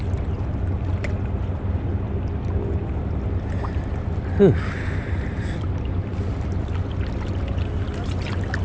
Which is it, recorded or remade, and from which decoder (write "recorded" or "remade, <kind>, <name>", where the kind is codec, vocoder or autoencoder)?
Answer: recorded